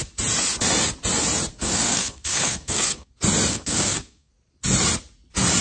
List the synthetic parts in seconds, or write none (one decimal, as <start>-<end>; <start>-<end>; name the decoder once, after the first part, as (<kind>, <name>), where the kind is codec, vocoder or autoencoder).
1.5-3.1 (codec, SNAC); 3.5-4.3